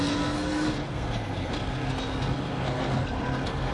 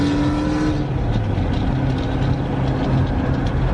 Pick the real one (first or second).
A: second